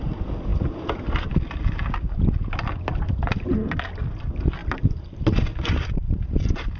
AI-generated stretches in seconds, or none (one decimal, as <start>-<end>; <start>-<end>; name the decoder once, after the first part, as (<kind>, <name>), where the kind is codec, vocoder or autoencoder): none